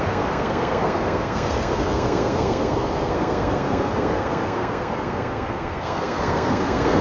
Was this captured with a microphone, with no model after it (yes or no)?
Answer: no